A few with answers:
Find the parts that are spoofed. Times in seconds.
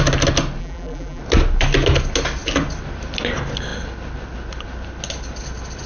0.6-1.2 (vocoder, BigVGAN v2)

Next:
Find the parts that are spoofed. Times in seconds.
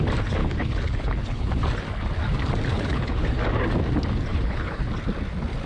0.4-1.5 (codec, HILCodec); 2.7-3.4; 4.3-4.9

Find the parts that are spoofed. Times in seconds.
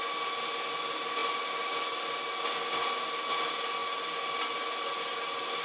none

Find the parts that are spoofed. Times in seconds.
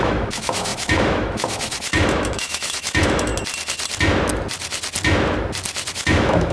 0.0-3.3 (autoencoder, DAC-VAE); 5.9-6.5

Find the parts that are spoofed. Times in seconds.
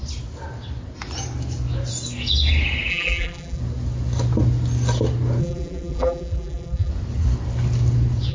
2.9-3.6 (vocoder, BigVGAN v2); 5.4-6.9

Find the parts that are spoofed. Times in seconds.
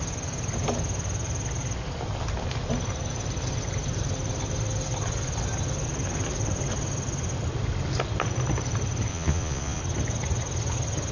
9.1-9.8 (vocoder, Vocos)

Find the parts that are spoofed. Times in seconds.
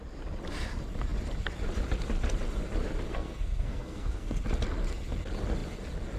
3.1-4.4 (codec, SNAC)